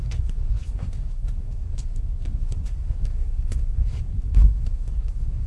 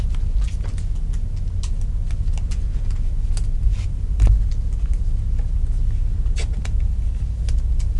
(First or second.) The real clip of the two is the second